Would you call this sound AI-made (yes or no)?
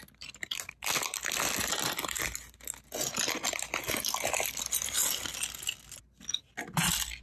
no